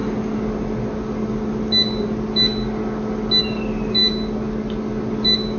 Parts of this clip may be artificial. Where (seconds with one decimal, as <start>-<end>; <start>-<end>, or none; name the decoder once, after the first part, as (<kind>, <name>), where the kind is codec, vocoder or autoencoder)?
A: none